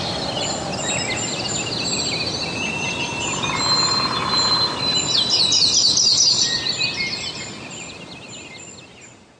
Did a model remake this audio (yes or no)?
no